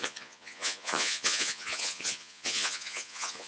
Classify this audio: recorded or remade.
remade